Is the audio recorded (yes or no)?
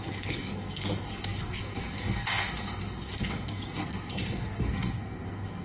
no